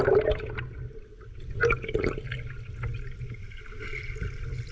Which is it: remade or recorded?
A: recorded